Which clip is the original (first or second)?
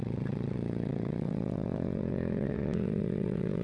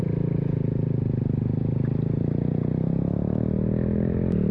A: second